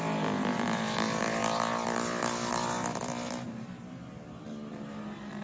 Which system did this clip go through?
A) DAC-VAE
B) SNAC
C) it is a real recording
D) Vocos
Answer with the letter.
C